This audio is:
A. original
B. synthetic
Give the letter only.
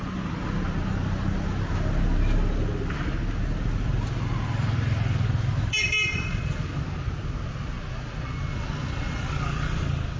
A